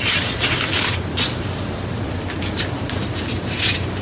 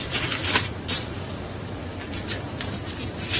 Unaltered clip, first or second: first